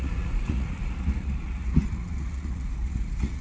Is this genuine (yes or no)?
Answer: no